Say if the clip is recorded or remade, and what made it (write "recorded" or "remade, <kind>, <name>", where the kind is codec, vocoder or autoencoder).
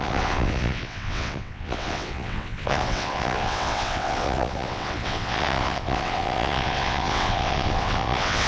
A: remade, vocoder, WaveNeXt